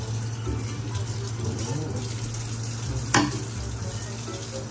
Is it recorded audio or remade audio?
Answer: recorded